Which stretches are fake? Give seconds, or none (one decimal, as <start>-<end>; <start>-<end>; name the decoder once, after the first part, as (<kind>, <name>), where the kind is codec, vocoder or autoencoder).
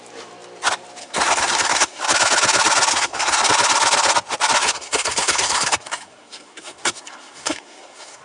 1.0-2.0 (codec, SNAC); 2.9-3.5; 4.6-8.2